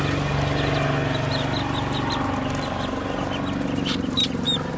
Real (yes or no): yes